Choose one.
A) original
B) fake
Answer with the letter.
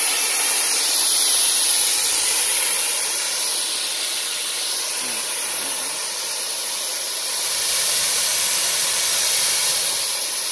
B